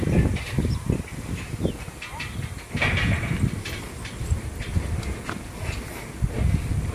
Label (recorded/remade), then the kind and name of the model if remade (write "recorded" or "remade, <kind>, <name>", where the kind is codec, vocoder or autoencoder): recorded